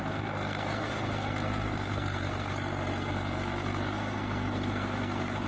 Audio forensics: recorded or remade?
remade